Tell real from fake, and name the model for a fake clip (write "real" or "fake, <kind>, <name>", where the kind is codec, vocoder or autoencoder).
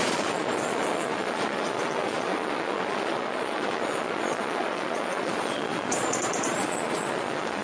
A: fake, vocoder, Vocos